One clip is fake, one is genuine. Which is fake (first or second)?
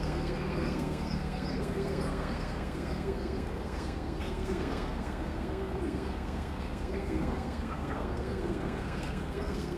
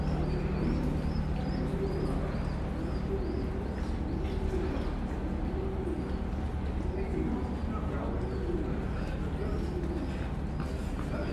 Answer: first